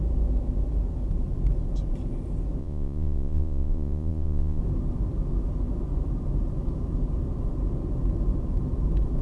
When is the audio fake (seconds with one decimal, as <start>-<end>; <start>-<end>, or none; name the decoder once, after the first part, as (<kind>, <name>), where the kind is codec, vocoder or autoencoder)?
2.6-4.6 (vocoder, Vocos)